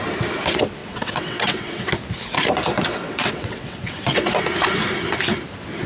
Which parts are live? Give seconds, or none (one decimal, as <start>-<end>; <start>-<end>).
0.0-0.8; 1.9-2.9; 4.4-5.9